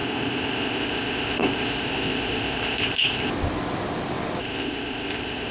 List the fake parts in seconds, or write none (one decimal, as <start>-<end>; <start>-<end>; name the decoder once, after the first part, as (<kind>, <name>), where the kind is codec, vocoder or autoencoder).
0.0-3.3 (codec, ZipCodec); 4.4-5.5